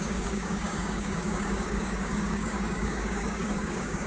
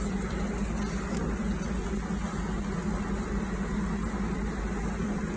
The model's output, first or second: first